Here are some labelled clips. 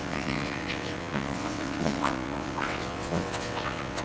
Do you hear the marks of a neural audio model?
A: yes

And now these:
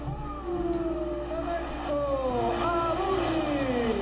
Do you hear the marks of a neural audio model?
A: no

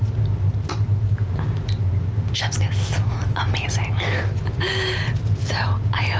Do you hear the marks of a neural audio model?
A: no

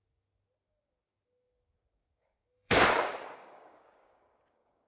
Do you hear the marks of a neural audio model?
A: yes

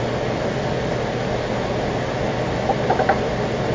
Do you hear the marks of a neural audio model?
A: no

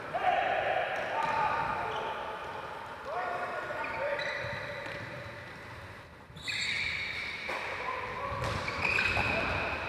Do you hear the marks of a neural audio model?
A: no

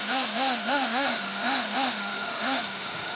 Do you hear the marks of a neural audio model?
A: yes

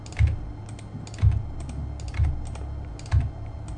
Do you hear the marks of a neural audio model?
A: no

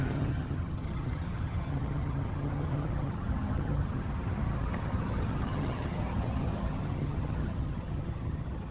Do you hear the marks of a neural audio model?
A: yes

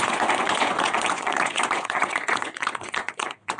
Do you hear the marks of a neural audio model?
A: yes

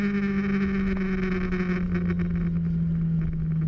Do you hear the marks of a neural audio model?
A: no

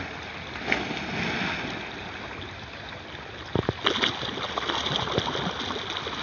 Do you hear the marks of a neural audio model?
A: no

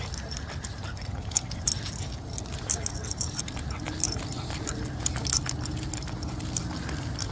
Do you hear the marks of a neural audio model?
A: no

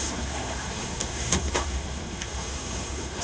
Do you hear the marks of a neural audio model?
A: yes